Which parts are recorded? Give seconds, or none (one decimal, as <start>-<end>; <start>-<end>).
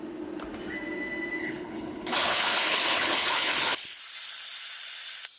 0.0-1.4; 4.0-5.4